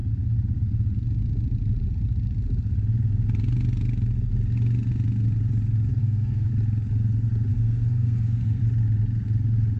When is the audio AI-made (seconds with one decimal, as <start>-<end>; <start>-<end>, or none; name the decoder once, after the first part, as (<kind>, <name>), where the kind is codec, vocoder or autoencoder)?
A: 6.0-6.5 (codec, SNAC); 7.5-8.6